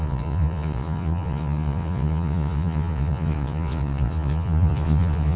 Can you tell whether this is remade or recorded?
remade